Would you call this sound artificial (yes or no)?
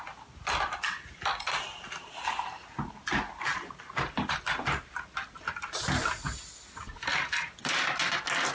no